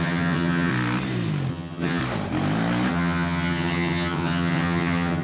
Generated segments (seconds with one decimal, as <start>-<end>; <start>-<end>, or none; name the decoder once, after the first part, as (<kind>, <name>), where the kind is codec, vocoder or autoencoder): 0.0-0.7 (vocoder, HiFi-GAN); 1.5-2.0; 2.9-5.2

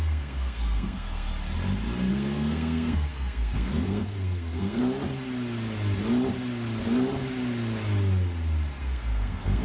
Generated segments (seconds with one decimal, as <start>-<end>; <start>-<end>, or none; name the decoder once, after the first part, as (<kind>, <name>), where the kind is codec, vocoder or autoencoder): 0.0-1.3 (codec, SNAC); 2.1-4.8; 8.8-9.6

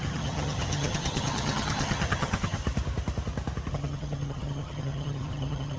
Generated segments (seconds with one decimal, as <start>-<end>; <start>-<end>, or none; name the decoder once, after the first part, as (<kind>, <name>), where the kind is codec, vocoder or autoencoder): 0.0-2.6 (vocoder, HiFi-GAN); 3.7-5.8

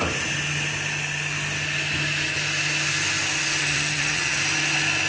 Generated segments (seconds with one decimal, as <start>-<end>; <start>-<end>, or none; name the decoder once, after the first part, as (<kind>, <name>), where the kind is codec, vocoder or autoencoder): 3.6-4.4 (vocoder, HiFi-GAN)

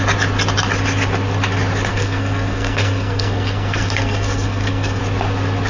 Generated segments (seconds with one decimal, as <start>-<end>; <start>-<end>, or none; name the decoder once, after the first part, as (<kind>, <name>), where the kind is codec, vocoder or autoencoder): 1.9-5.0 (codec, SNAC)

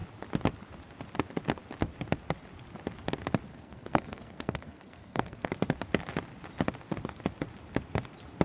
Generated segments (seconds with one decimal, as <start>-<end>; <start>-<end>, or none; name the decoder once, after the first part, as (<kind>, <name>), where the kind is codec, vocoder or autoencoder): 3.5-5.5 (codec, SNAC)

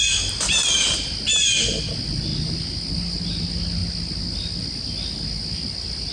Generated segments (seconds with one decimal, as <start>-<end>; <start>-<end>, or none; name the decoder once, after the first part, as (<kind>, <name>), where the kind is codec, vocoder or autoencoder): none